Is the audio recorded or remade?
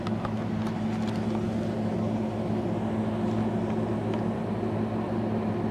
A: recorded